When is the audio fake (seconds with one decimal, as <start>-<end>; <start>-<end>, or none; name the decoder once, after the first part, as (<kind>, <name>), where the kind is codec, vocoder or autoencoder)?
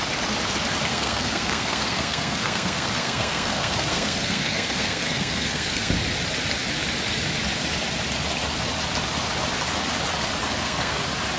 0.9-5.9 (codec, SNAC); 10.4-11.0